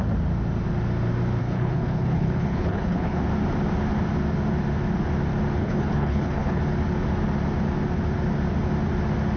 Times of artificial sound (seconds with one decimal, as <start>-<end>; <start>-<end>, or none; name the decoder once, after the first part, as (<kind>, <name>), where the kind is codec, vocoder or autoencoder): 1.4-3.2 (codec, HILCodec); 5.6-6.6